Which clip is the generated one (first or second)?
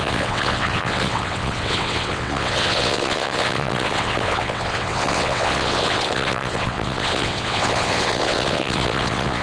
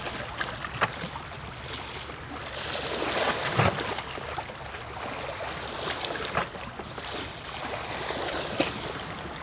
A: first